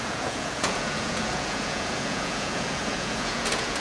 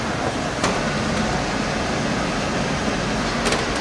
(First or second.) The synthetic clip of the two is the first